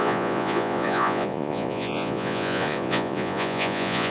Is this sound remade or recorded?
remade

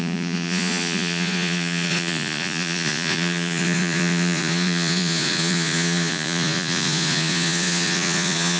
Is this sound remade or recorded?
remade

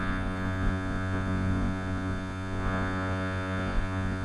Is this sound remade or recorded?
remade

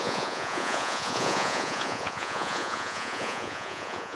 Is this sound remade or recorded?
remade